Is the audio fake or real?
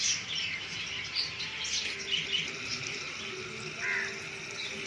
real